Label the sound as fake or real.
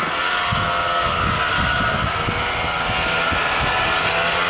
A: real